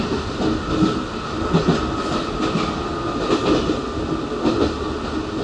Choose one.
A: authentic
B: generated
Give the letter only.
A